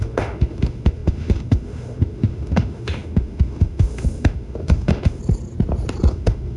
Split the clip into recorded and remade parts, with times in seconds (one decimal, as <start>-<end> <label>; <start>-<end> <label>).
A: 0.0-5.2 remade; 5.2-6.1 recorded; 6.1-6.6 remade